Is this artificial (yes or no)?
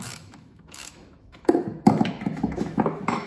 yes